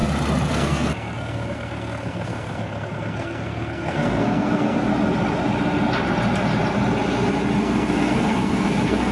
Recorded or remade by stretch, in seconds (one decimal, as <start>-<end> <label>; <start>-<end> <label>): 0.0-0.5 recorded; 0.5-4.9 remade; 4.9-7.6 recorded; 7.6-9.1 remade